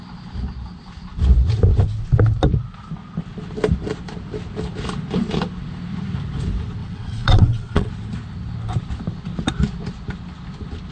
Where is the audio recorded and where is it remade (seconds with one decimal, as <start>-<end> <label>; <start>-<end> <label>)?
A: 0.0-6.8 recorded; 6.8-7.9 remade; 7.9-10.9 recorded